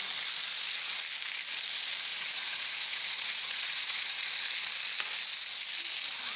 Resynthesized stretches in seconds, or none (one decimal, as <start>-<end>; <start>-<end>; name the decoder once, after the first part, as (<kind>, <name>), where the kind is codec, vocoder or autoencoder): 2.1-4.3 (vocoder, Vocos)